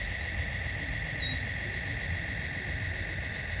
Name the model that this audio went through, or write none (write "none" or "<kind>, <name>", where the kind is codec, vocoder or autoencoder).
none